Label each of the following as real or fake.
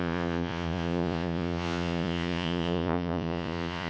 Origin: fake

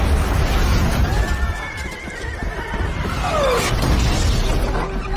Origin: real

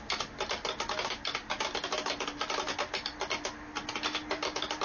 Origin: real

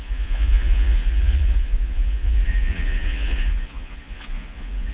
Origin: fake